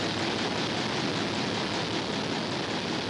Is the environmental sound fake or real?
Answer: real